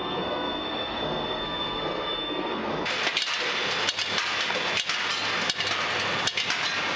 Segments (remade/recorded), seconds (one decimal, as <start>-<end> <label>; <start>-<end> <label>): 0.0-2.7 remade; 2.7-7.0 recorded